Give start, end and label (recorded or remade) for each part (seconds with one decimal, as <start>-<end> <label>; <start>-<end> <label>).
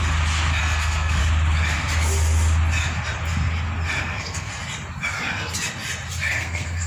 0.0-0.6 recorded; 0.6-1.2 remade; 1.2-4.0 recorded; 4.0-4.5 remade; 4.5-6.3 recorded; 6.3-6.9 remade